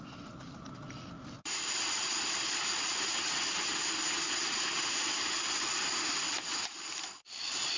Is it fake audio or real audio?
real